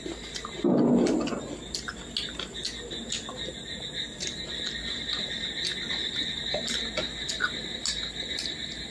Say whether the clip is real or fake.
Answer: real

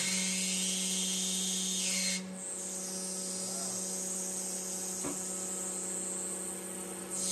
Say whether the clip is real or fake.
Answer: real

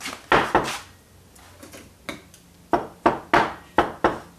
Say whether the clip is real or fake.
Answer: real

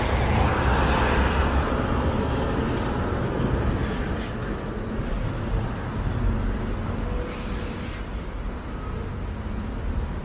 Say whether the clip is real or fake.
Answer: real